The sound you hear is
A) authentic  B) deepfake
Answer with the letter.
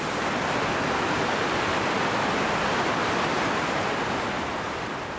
A